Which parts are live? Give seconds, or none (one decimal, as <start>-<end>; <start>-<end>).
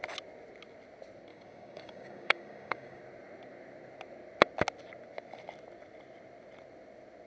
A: 0.0-1.3; 3.0-7.3